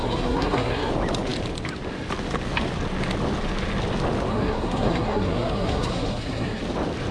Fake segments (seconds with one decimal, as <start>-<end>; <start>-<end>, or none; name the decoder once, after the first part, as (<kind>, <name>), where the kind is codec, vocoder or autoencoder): 0.0-0.9 (codec, SNAC); 4.3-6.6